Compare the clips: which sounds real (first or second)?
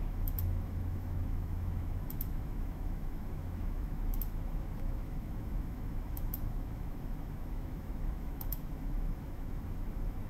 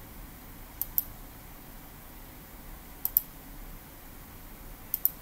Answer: second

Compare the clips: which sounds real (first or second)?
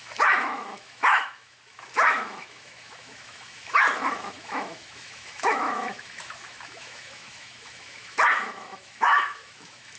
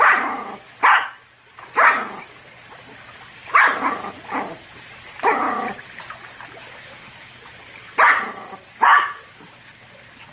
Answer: second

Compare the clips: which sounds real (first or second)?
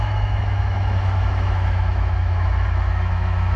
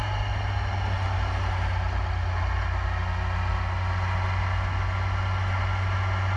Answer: second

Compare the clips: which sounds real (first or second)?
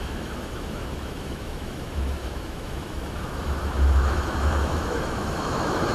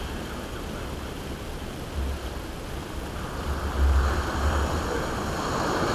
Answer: second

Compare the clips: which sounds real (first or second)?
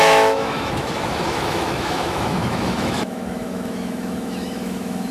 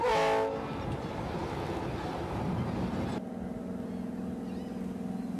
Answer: second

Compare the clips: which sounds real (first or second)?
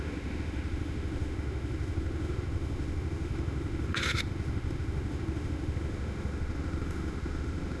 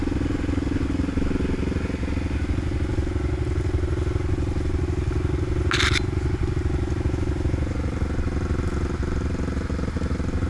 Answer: second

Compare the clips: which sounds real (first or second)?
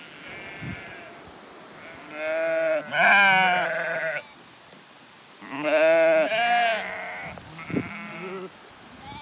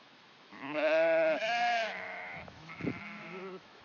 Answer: first